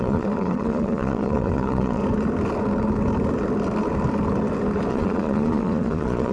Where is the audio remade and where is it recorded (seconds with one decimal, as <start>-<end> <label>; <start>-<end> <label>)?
0.0-2.0 remade; 2.0-4.9 recorded; 4.9-6.3 remade

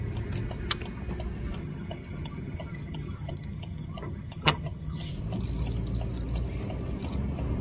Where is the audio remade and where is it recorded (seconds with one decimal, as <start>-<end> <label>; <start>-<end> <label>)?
0.0-1.6 recorded; 1.6-5.1 remade; 5.1-7.6 recorded

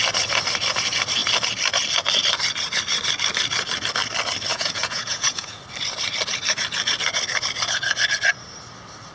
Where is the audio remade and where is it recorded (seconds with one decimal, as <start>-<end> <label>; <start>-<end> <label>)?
0.0-4.5 recorded; 4.5-5.6 remade; 5.6-9.1 recorded